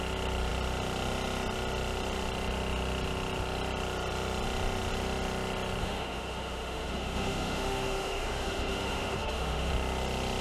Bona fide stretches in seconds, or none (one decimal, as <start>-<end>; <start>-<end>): 0.0-5.8; 9.7-10.4